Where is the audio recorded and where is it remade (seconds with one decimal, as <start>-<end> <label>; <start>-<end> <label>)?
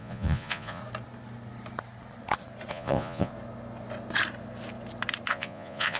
0.0-0.8 remade; 0.8-2.7 recorded; 2.7-3.3 remade; 3.3-5.3 recorded; 5.3-6.0 remade